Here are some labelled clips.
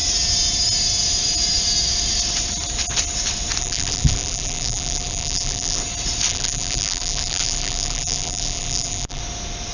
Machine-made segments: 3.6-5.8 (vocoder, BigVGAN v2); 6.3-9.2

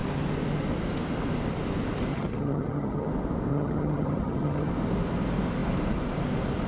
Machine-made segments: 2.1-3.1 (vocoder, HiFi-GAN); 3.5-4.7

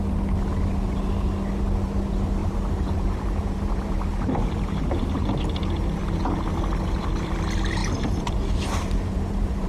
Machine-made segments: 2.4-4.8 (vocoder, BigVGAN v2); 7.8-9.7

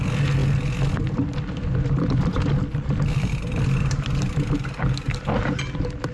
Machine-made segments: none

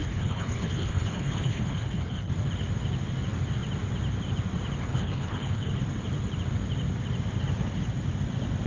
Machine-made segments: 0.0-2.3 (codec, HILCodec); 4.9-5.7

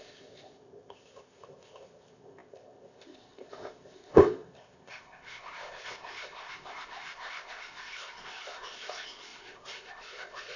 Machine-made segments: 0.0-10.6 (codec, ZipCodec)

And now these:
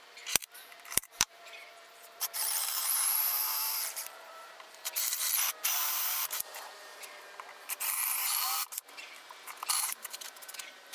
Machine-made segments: 0.0-8.5 (vocoder, BigVGAN v2); 9.7-10.9